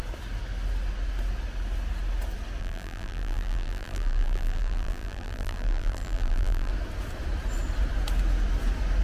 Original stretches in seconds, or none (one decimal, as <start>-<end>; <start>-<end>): 0.0-2.6; 6.7-9.0